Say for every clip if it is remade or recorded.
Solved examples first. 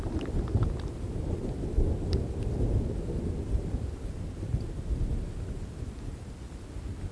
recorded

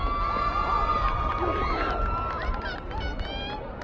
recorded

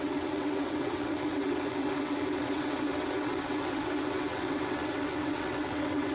remade